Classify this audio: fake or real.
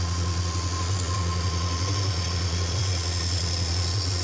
fake